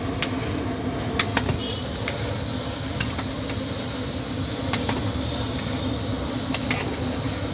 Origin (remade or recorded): recorded